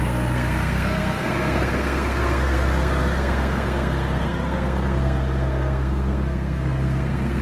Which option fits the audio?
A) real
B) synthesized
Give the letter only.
B